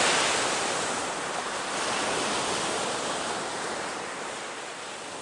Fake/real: real